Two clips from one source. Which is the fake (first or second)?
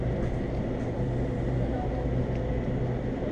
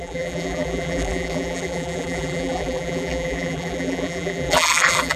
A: second